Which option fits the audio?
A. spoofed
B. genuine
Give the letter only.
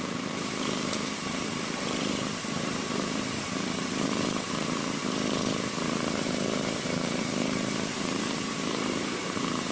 A